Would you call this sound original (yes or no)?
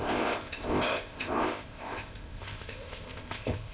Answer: no